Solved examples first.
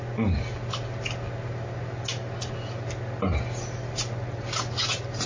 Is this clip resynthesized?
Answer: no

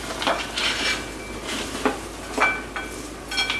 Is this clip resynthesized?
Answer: no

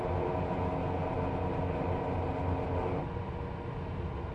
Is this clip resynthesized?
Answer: no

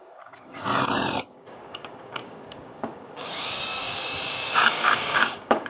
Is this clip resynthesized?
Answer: yes